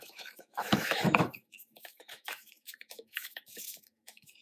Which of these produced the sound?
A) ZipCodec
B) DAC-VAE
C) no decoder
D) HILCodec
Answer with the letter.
B